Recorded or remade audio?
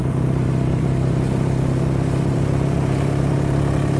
remade